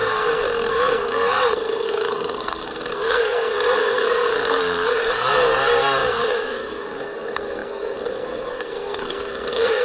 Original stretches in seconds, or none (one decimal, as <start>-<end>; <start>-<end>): none